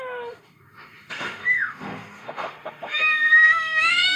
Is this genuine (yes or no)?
no